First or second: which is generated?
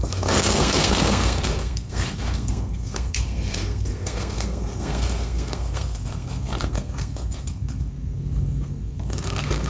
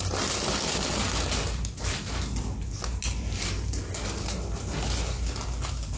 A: first